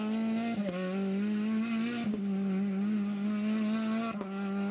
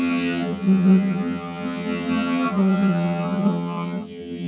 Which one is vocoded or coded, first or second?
second